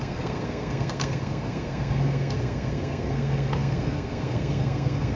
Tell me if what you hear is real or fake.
fake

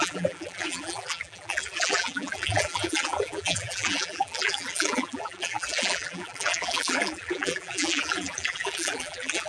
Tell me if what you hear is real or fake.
fake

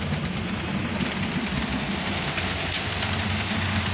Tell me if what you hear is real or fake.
real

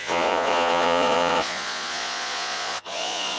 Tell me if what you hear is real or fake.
fake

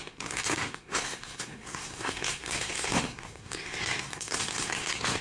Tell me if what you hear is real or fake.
fake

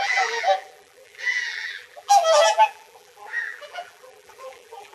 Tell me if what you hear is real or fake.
fake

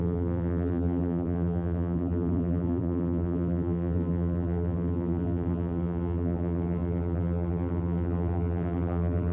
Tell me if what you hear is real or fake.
fake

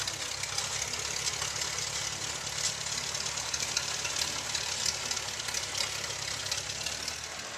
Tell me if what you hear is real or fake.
real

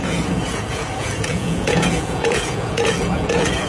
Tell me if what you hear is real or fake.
fake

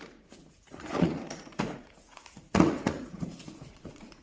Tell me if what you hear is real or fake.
fake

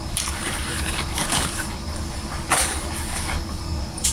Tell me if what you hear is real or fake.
fake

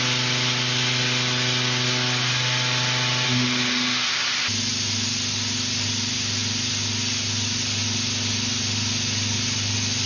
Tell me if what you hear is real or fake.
real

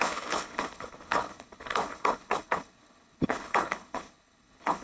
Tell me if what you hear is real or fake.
fake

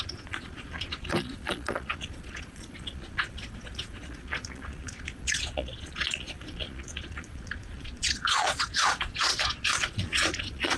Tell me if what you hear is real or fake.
fake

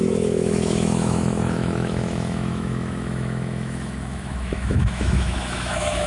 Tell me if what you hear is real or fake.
fake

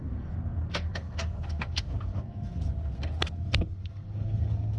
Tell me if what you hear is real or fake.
fake